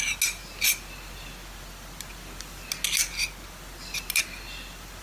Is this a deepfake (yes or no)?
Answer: no